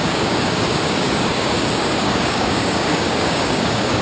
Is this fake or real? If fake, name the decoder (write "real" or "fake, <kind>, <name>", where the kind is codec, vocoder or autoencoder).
fake, codec, DAC